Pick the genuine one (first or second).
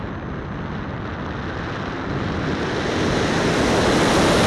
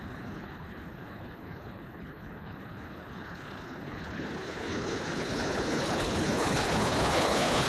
first